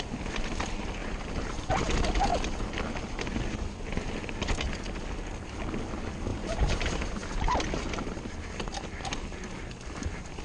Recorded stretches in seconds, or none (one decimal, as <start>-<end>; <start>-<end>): 0.0-6.3; 7.0-10.4